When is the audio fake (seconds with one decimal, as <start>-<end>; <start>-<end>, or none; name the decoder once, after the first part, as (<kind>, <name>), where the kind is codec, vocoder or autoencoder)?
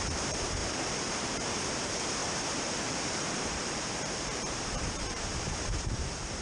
0.0-6.4 (vocoder, BigVGAN v2)